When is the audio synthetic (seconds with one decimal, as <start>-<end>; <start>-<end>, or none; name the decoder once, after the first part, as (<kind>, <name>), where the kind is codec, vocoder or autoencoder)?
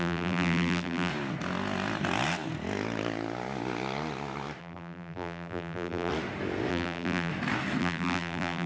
0.0-1.1 (vocoder, BigVGAN v2); 4.6-6.1; 6.7-7.3; 7.8-8.7